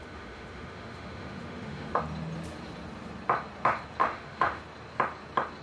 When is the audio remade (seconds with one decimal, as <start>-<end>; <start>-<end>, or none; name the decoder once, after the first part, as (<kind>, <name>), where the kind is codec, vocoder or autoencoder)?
0.0-2.0 (autoencoder, DAC-VAE); 4.0-4.6